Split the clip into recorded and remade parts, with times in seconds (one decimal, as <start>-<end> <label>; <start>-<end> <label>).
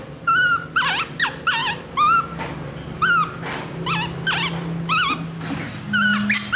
0.0-6.6 recorded